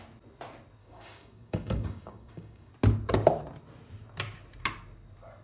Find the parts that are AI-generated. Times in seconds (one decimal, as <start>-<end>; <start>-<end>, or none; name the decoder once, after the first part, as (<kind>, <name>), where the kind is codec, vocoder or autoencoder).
0.8-2.7 (codec, DAC)